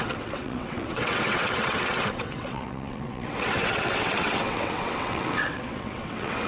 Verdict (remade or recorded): remade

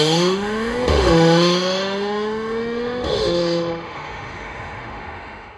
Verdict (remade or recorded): remade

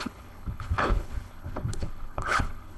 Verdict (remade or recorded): remade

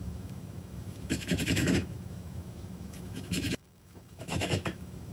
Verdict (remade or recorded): remade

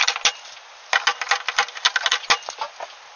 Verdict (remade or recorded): recorded